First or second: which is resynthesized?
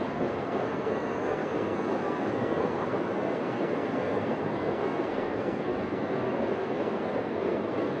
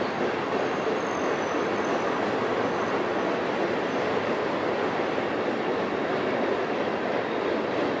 first